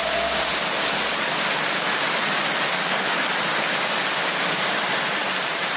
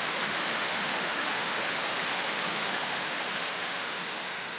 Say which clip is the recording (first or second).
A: first